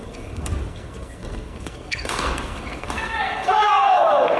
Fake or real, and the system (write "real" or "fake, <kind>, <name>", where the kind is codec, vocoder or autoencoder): fake, codec, SNAC